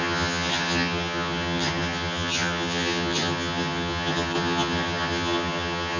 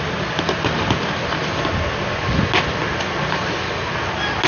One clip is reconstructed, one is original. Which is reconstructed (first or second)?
first